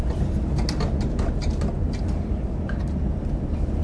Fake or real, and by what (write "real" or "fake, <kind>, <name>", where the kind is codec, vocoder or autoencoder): real